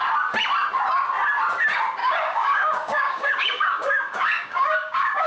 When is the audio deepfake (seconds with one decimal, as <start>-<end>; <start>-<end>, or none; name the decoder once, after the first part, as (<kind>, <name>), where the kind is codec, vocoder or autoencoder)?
2.0-5.3 (codec, DAC)